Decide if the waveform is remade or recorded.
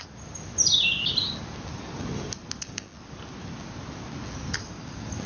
recorded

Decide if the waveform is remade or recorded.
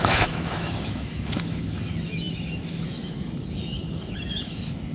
remade